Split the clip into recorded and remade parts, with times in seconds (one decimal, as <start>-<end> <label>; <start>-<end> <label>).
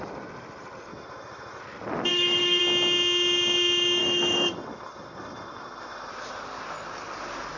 0.0-0.9 recorded; 0.9-1.6 remade; 1.6-2.1 recorded; 2.1-2.6 remade; 2.6-4.0 recorded; 4.0-6.1 remade; 6.1-7.6 recorded